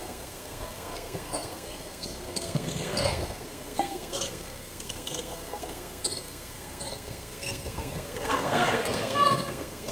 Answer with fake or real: fake